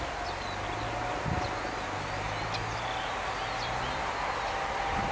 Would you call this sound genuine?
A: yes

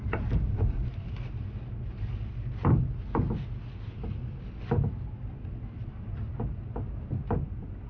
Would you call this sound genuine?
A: yes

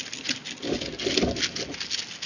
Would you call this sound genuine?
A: yes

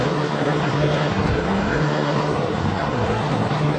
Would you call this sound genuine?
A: no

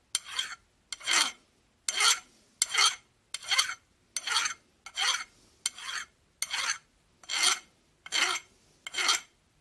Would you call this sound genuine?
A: yes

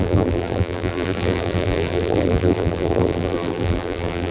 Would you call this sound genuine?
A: no